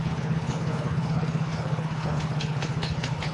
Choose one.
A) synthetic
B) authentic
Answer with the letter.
A